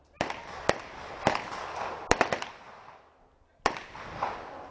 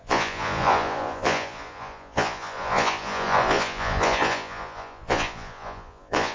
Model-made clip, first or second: second